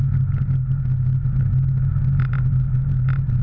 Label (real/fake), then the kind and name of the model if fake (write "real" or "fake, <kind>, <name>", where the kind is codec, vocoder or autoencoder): real